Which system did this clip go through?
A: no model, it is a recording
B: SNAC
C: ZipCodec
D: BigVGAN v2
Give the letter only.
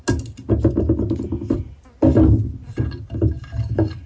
A